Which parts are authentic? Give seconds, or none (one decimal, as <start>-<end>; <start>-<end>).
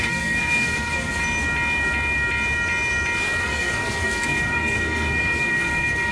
1.2-3.4